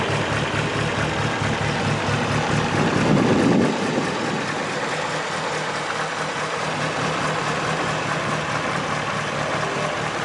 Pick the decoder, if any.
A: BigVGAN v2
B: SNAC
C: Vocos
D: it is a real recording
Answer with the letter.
D